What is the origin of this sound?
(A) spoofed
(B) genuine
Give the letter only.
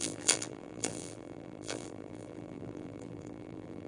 A